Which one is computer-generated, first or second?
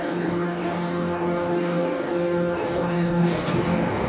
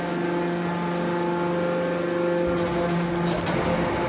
first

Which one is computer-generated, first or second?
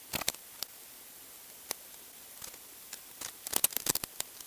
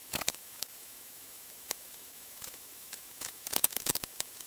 second